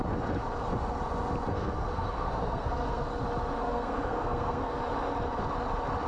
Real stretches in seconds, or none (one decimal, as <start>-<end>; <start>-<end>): 0.0-1.5; 3.1-3.6; 4.8-6.1